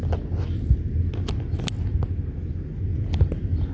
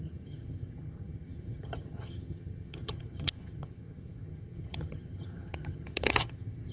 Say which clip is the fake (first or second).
second